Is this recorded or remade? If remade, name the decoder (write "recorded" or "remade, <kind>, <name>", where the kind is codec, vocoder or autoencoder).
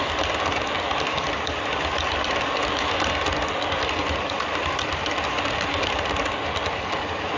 recorded